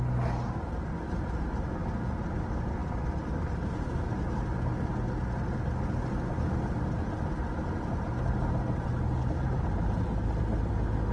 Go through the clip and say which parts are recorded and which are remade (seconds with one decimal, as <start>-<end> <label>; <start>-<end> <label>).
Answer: 0.0-11.1 recorded